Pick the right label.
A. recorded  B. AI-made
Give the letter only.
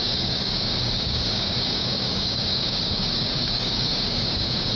B